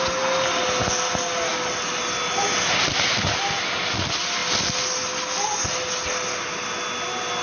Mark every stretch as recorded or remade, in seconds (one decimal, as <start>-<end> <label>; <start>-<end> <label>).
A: 0.0-7.4 recorded